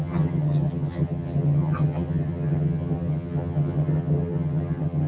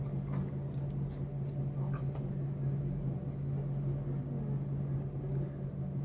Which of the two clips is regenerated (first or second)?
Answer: first